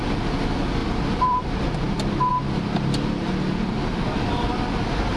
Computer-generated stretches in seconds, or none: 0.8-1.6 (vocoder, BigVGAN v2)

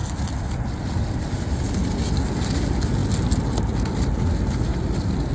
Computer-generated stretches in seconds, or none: none

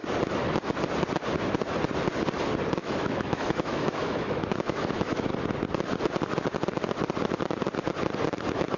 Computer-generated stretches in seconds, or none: 2.8-5.3 (autoencoder, DAC-VAE)